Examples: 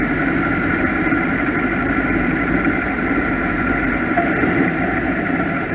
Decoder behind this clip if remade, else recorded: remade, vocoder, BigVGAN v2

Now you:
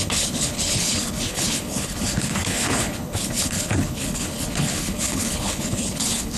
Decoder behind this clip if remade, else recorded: remade, codec, HILCodec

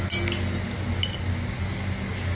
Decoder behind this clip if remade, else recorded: recorded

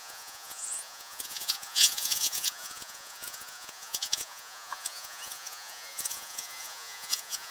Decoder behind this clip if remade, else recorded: remade, vocoder, Vocos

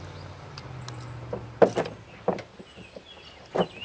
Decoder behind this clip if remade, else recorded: recorded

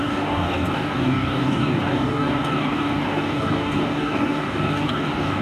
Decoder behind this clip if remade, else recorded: remade, codec, DAC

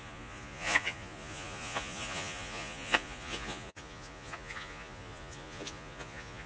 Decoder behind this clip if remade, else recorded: remade, vocoder, Vocos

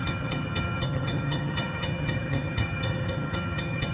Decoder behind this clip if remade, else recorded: remade, vocoder, HiFi-GAN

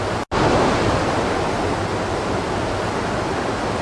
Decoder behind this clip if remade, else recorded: recorded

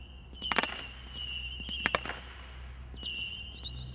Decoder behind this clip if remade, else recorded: recorded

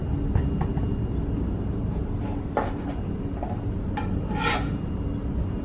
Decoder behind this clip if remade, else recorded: recorded